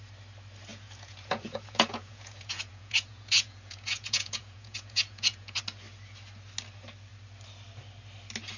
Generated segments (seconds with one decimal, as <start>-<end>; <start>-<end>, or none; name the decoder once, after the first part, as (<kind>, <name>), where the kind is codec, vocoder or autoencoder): 0.7-5.6 (vocoder, Vocos)